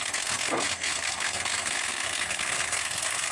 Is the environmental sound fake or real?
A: fake